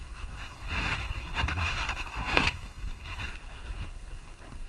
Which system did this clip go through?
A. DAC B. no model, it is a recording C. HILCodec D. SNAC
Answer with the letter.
D